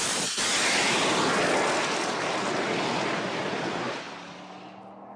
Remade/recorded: recorded